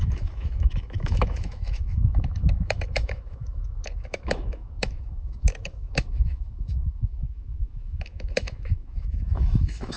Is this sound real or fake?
fake